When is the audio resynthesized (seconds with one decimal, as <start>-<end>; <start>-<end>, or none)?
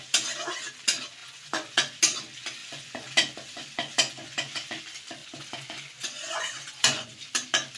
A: 1.2-2.0; 2.6-4.8; 5.2-7.2